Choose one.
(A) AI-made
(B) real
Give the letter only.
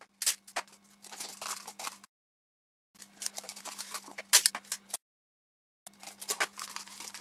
B